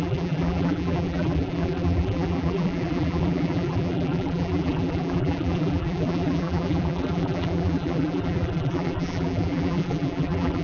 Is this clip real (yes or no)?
no